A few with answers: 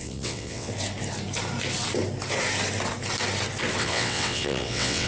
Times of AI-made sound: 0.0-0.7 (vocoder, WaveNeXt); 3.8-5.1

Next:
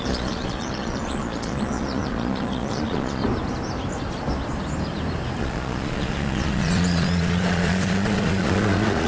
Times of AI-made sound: 0.0-3.2 (vocoder, Vocos); 5.4-9.1

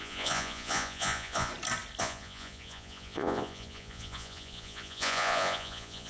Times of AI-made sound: 0.0-1.5 (vocoder, Vocos); 2.0-6.1

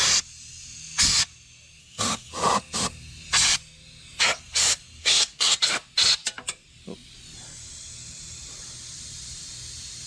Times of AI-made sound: 1.8-2.3 (codec, SNAC); 5.0-5.6

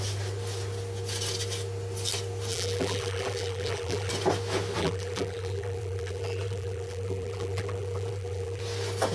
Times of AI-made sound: 2.5-4.1 (vocoder, BigVGAN v2); 4.8-8.6

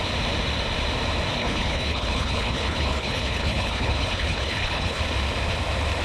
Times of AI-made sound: 1.4-5.0 (codec, HILCodec)

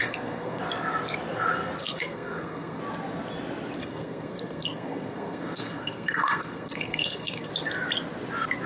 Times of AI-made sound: 0.0-0.6 (codec, SNAC); 1.8-2.8; 3.8-7.5